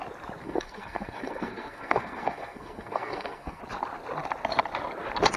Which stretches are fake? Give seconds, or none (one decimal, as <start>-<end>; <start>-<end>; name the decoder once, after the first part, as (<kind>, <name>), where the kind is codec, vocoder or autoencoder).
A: 0.4-3.6 (codec, SNAC)